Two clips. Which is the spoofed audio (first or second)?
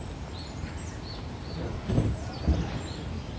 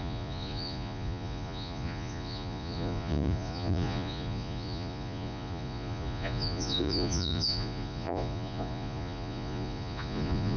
second